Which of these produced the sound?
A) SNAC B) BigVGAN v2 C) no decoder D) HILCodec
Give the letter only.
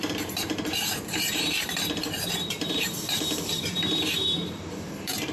B